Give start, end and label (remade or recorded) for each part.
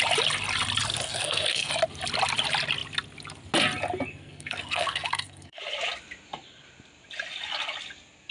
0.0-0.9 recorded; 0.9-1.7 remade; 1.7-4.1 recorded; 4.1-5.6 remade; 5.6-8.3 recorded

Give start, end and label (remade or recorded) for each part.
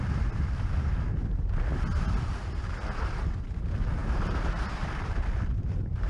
0.0-4.0 recorded; 4.0-4.9 remade; 4.9-6.1 recorded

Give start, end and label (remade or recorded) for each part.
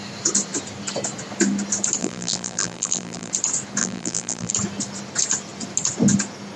0.0-2.0 recorded; 2.0-3.3 remade; 3.3-3.8 recorded; 3.8-4.5 remade; 4.5-6.6 recorded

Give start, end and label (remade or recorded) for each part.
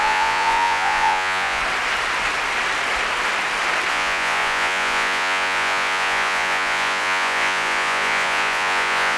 0.0-1.6 remade; 1.6-3.9 recorded; 3.9-9.2 remade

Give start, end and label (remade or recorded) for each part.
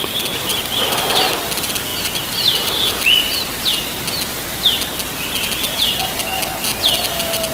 0.0-0.5 recorded; 0.5-1.3 remade; 1.3-1.9 recorded; 1.9-2.9 remade; 2.9-7.5 recorded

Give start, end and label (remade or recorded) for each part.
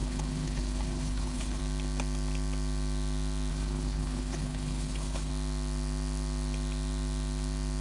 0.0-1.6 remade; 1.6-3.5 recorded; 3.5-5.3 remade; 5.3-7.8 recorded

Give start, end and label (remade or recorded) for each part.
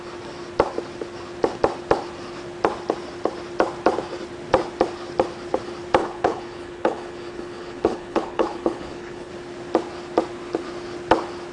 0.0-6.0 recorded; 6.0-9.3 remade; 9.3-11.5 recorded